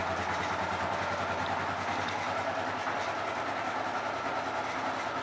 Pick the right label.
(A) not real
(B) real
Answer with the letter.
A